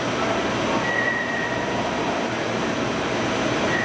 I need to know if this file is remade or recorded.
recorded